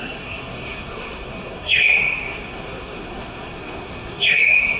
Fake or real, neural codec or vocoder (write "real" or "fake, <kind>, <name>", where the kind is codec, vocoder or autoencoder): fake, codec, SNAC